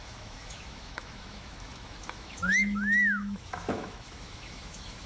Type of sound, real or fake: fake